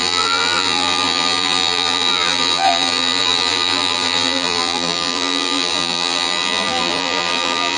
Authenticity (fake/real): fake